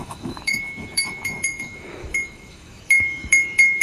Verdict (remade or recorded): remade